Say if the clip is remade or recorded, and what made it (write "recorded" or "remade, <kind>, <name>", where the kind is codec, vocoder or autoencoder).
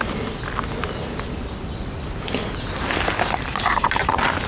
recorded